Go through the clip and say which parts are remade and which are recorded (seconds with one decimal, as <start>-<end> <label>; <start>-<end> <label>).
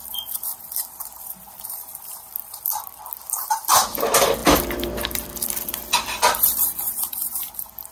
0.0-2.4 remade; 2.4-3.7 recorded; 3.7-7.9 remade